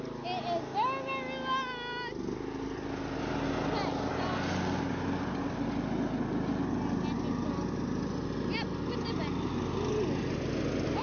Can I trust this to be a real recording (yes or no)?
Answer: yes